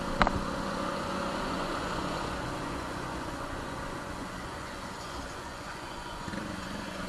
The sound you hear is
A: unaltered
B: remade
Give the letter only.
B